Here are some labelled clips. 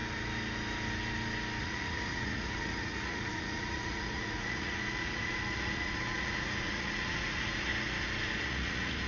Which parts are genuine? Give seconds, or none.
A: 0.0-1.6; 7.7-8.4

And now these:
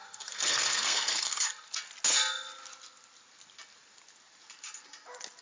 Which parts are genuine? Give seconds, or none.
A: 1.5-5.4

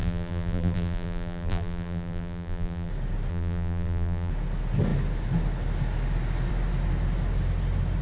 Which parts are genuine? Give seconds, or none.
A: 2.9-3.3; 4.3-8.0

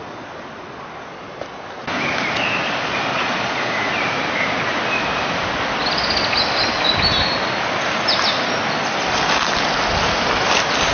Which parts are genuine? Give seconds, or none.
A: 0.0-3.1; 3.7-10.9

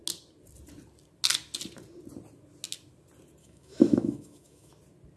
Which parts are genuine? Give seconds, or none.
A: 0.0-3.4; 4.7-5.2

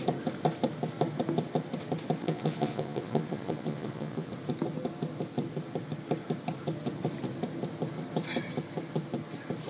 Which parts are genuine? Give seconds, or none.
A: 0.0-2.2; 4.3-9.7

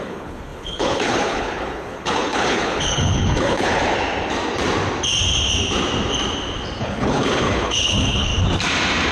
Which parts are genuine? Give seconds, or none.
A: 3.8-6.8; 8.3-9.1